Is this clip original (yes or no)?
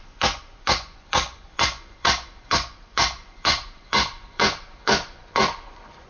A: no